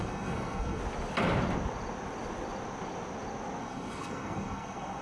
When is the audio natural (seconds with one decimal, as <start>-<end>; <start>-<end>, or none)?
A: 0.8-3.6